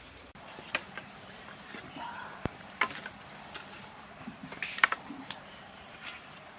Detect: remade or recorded remade